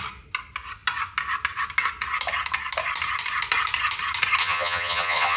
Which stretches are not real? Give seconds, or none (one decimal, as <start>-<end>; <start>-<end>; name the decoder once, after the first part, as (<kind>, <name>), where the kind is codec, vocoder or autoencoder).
4.4-5.4 (vocoder, HiFi-GAN)